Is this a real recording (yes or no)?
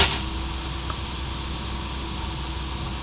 yes